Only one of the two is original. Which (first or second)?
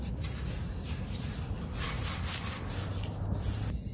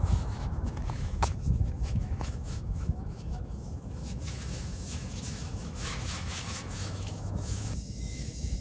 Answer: first